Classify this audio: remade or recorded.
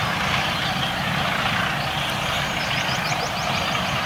recorded